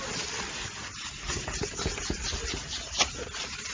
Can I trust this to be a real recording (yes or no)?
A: yes